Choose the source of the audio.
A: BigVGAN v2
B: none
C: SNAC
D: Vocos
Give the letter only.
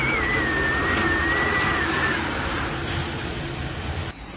B